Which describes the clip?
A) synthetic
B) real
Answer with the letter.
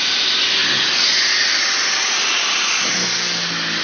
B